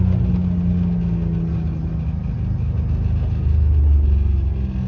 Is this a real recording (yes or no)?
yes